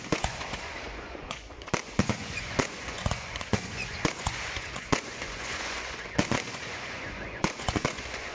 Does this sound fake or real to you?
fake